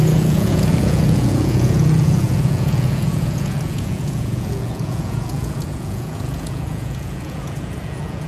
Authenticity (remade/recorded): remade